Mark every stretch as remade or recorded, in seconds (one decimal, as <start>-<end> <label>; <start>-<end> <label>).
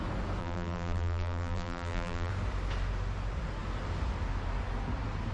0.0-0.4 recorded; 0.4-2.3 remade; 2.3-5.3 recorded